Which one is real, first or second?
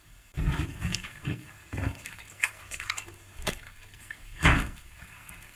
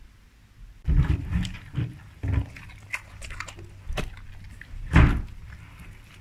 second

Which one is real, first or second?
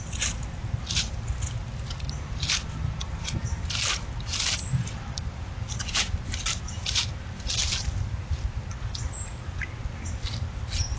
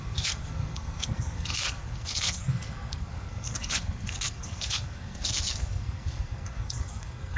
first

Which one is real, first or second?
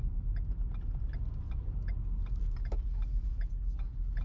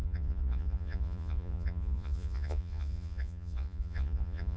first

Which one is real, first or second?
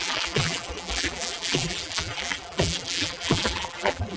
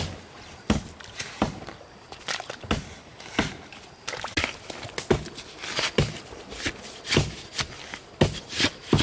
second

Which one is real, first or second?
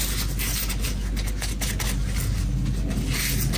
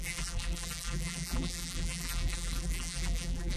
first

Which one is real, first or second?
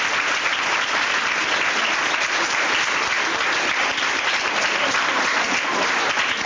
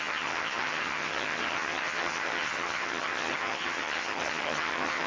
first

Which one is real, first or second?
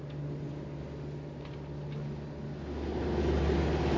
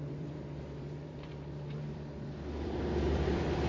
first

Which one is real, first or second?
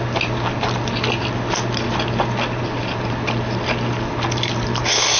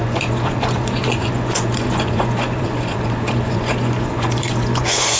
first